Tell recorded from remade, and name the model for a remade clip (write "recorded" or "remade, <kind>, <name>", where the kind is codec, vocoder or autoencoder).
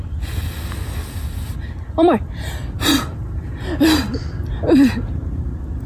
recorded